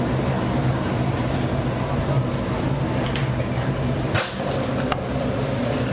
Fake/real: real